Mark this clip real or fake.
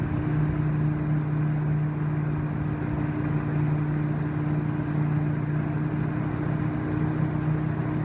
real